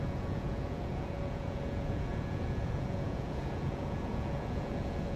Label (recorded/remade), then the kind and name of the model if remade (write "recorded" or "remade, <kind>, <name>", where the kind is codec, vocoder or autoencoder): remade, vocoder, Vocos